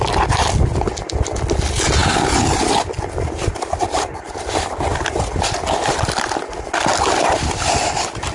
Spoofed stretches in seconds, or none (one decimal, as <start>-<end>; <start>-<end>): none